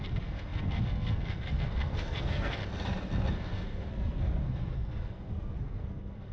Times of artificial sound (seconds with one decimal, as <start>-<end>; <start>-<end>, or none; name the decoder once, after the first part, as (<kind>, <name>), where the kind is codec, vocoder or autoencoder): 0.0-2.6 (codec, SNAC); 3.3-6.3